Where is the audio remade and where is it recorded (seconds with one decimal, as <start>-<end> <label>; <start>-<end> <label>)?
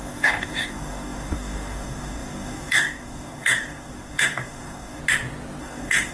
0.0-5.0 remade; 5.0-5.6 recorded; 5.6-6.1 remade